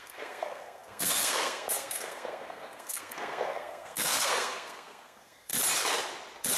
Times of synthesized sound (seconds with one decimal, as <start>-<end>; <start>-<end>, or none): 0.0-5.5